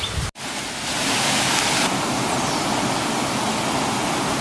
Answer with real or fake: real